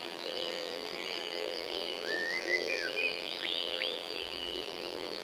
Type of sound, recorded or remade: remade